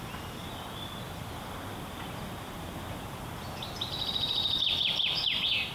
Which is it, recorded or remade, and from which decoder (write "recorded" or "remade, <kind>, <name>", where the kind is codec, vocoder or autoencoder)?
recorded